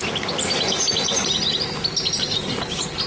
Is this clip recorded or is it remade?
recorded